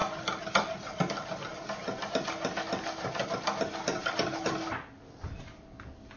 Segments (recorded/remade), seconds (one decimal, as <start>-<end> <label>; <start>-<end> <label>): 0.0-6.2 recorded

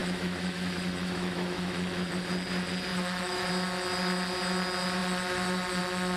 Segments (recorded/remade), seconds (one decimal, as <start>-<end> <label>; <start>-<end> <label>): 0.0-2.1 remade; 2.1-2.9 recorded; 2.9-3.5 remade; 3.5-6.2 recorded

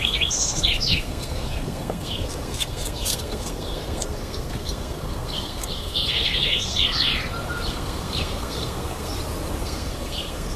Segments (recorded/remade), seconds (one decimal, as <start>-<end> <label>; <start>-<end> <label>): 0.0-7.1 remade; 7.1-7.7 recorded; 7.7-9.1 remade; 9.1-9.6 recorded; 9.6-10.6 remade

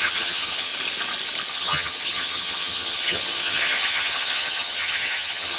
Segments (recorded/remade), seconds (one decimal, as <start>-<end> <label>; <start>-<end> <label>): 0.0-0.7 remade; 0.7-1.5 recorded; 1.5-5.6 remade

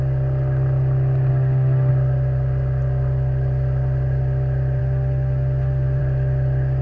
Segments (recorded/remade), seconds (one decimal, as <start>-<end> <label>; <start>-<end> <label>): 0.0-1.3 recorded; 1.3-1.9 remade; 1.9-4.8 recorded; 4.8-6.0 remade; 6.0-6.8 recorded

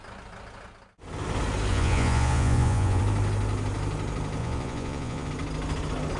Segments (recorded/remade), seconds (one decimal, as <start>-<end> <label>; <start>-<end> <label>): 0.0-1.7 recorded; 1.7-3.0 remade; 3.0-4.4 recorded; 4.4-5.3 remade; 5.3-6.2 recorded

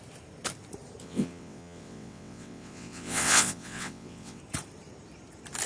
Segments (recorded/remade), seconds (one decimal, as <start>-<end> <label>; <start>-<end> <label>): 0.0-1.0 recorded; 1.0-4.4 remade; 4.4-5.7 recorded

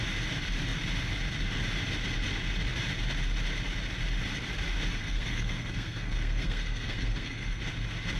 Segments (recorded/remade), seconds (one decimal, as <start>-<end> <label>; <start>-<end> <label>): 0.0-5.0 recorded; 5.0-7.6 remade; 7.6-8.2 recorded